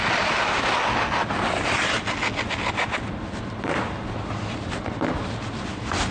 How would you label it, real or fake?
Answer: real